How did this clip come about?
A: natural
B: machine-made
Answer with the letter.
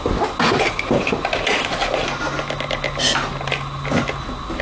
A